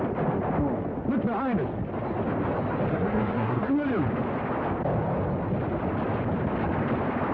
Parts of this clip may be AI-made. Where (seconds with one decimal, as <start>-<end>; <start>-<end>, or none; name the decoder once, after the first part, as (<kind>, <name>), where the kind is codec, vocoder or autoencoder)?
2.9-3.7 (codec, SNAC)